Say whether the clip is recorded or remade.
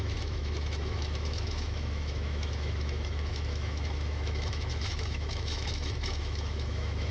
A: remade